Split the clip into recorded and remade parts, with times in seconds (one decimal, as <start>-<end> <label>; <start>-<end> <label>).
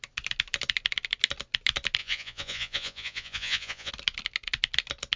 0.0-2.0 recorded; 2.0-3.9 remade; 3.9-5.2 recorded